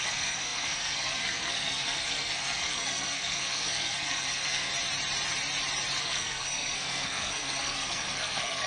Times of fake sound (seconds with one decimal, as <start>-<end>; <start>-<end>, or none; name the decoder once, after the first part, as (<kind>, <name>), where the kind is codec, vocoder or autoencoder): 0.0-4.7 (codec, SNAC); 6.0-8.7